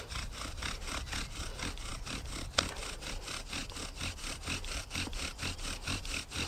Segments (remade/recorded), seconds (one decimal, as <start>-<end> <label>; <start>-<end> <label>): 0.0-3.6 remade; 3.6-4.4 recorded; 4.4-6.5 remade